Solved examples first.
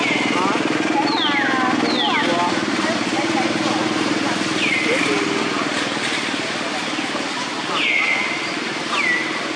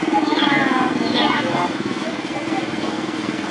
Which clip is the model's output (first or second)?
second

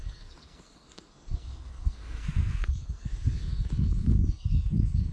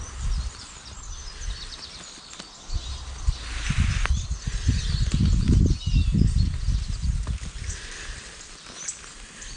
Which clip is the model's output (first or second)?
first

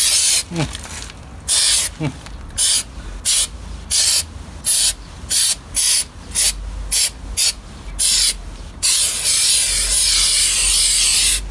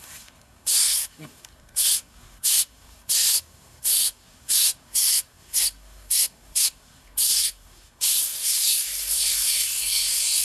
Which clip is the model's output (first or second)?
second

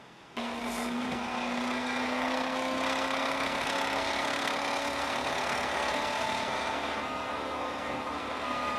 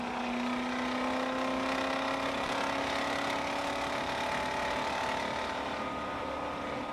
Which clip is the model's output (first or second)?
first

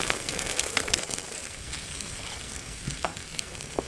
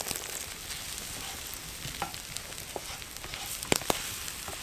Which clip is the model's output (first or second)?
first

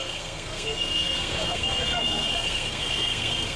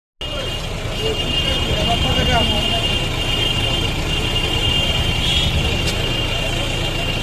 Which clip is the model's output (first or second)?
first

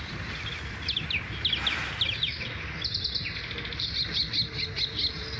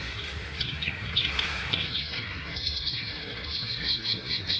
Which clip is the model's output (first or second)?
second